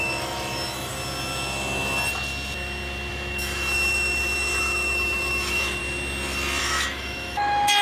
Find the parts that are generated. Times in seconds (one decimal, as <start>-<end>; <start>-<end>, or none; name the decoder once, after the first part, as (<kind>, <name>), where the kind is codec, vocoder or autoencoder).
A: 0.0-0.9 (autoencoder, DAC-VAE); 3.1-5.8; 6.6-7.8